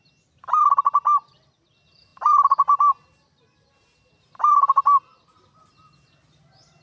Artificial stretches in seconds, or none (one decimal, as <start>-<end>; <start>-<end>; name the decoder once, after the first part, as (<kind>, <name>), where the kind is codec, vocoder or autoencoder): none